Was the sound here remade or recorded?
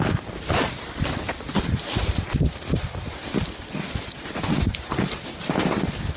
recorded